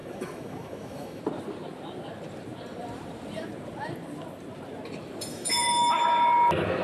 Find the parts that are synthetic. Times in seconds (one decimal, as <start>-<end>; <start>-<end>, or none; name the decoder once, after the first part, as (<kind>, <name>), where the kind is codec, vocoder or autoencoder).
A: 0.0-1.2 (autoencoder, DAC-VAE); 5.3-6.0